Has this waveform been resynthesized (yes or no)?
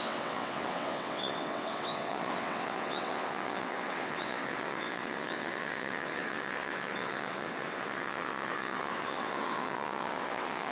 yes